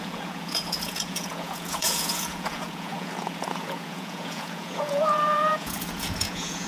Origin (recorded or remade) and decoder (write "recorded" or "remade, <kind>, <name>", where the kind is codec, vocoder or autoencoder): remade, vocoder, Vocos